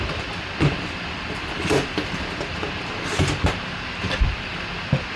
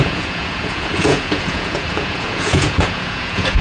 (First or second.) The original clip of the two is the first